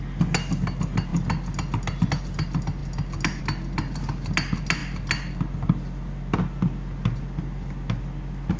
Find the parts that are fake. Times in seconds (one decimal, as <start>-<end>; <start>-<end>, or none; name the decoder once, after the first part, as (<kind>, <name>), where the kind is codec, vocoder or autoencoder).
none